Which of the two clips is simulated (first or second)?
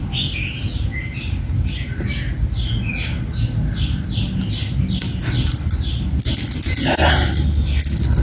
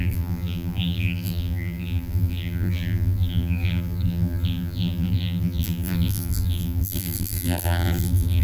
second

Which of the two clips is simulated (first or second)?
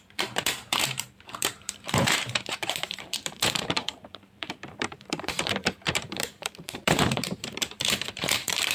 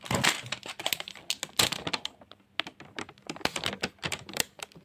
first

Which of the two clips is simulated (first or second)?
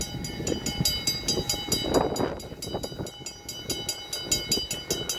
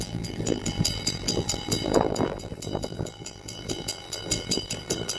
second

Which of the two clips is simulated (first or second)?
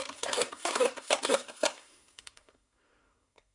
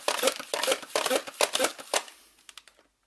first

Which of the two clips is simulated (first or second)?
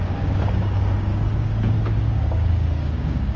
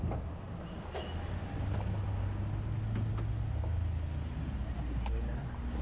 first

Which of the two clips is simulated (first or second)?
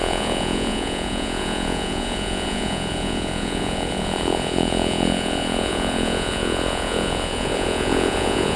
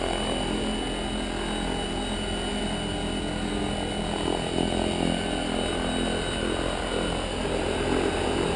first